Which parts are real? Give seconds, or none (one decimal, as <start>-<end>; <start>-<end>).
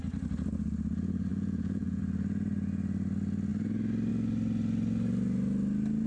0.0-1.3; 2.0-6.1